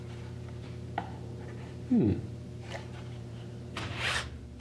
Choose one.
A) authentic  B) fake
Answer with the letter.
B